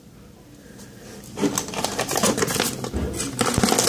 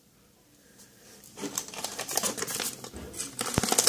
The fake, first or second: second